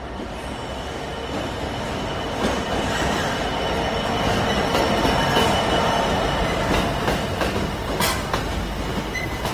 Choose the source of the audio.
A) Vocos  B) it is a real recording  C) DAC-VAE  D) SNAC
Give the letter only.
B